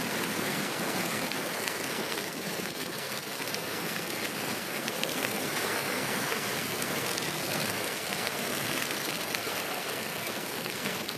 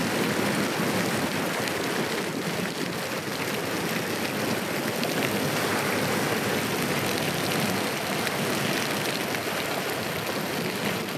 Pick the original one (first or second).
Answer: second